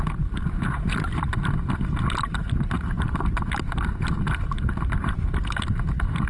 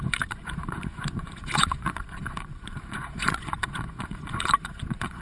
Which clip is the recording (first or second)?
first